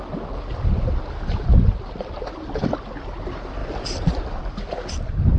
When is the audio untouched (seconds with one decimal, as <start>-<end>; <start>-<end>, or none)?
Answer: 0.0-5.4